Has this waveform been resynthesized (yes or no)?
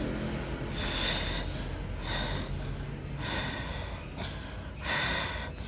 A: no